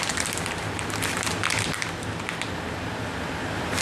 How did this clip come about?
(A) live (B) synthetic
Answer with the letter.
B